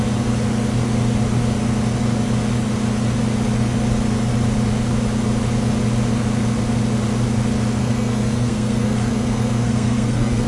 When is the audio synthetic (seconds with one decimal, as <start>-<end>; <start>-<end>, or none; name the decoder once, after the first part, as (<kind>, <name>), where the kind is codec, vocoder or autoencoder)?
7.8-10.5 (codec, SNAC)